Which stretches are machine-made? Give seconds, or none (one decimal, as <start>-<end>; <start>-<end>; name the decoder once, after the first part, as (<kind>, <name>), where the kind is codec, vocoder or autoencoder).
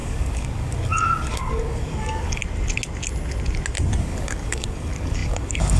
0.0-2.4 (codec, DAC); 4.0-5.8